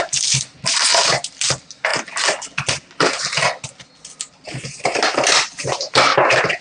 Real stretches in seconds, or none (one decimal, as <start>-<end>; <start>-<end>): 0.0-1.9; 2.5-6.6